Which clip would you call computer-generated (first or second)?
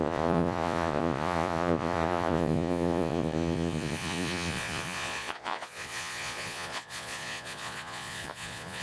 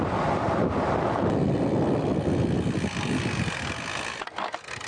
first